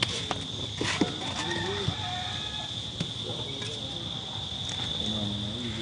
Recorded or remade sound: recorded